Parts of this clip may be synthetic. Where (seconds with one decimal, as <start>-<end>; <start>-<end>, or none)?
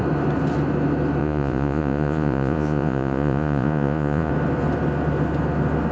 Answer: 1.2-4.3